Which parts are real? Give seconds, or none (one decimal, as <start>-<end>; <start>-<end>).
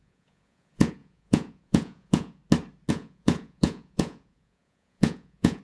2.4-2.9